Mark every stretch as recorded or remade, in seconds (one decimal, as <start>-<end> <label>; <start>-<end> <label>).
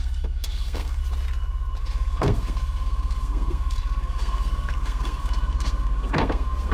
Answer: 0.0-1.0 remade; 1.0-1.8 recorded; 1.8-6.7 remade